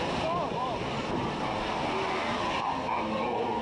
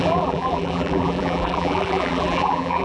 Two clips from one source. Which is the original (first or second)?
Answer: first